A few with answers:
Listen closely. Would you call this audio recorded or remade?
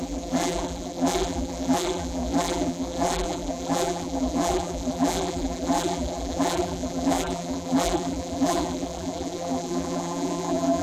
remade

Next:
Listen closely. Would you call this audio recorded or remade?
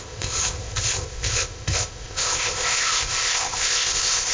remade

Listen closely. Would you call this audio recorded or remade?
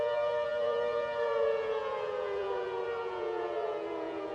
remade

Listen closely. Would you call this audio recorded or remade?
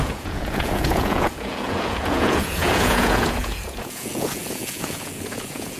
remade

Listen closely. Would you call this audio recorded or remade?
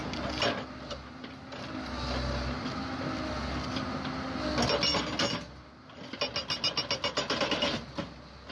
recorded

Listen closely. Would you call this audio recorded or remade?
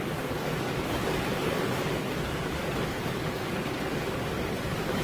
remade